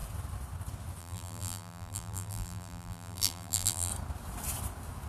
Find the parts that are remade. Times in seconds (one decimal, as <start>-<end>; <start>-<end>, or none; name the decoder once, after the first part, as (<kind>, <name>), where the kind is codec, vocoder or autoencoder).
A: 1.0-3.9 (vocoder, BigVGAN v2)